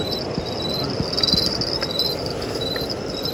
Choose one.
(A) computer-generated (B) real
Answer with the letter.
B